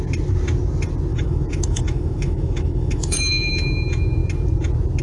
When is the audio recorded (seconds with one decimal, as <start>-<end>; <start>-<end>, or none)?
0.0-1.1; 3.5-5.0